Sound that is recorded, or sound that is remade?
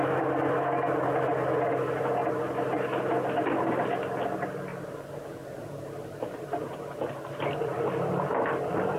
recorded